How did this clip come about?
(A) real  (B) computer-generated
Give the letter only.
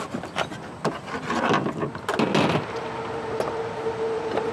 A